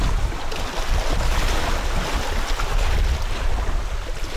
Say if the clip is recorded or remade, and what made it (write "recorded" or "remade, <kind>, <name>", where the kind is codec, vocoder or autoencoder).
recorded